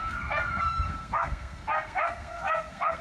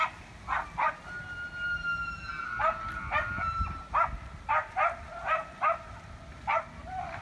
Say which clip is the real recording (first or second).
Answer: second